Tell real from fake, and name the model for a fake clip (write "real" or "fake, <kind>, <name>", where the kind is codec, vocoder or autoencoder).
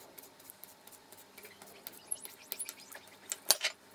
real